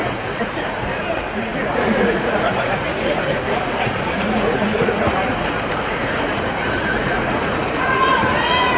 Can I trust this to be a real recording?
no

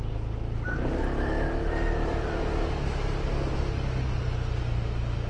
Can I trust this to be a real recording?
yes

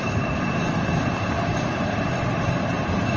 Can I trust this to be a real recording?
yes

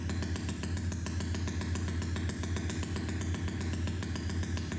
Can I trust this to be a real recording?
yes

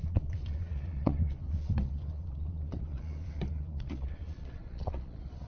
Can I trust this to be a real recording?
no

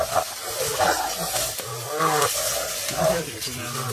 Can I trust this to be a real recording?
yes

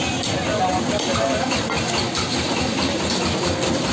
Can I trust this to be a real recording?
yes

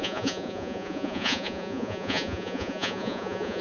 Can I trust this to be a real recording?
no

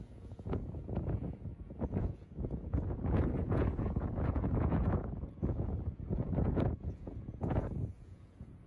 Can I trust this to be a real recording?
no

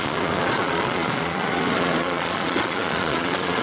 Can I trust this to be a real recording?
no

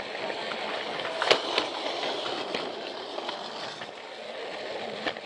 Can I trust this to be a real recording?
yes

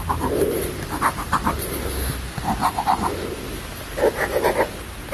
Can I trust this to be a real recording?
yes